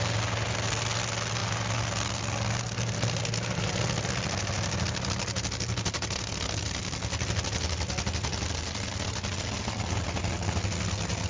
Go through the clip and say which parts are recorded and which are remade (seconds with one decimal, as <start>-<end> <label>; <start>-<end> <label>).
0.0-11.3 recorded